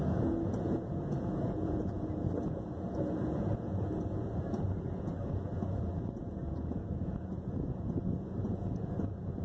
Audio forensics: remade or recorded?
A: remade